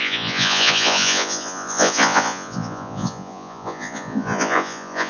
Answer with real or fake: fake